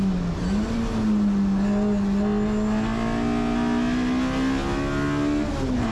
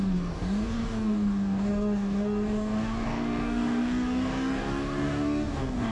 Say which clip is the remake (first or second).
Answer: second